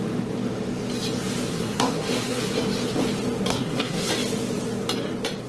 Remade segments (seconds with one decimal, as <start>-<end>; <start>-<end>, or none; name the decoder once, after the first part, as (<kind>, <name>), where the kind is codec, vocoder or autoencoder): 1.5-2.4 (codec, SNAC); 3.5-4.1